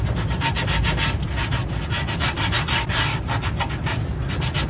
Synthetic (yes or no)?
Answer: no